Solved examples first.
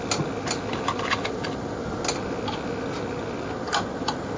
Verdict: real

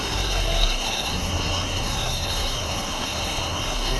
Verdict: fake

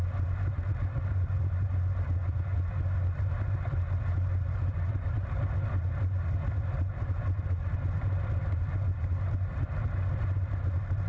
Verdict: real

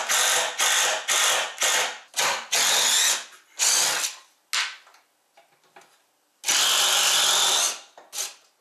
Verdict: real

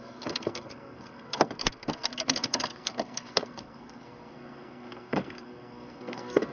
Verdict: fake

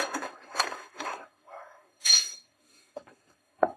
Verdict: fake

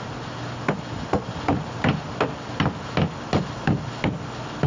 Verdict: real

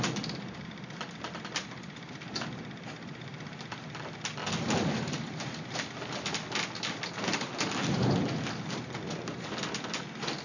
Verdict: real